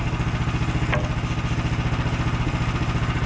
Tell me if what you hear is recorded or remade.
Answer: recorded